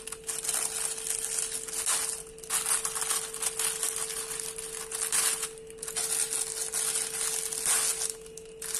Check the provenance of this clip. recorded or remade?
recorded